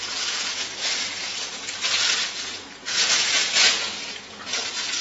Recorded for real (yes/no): no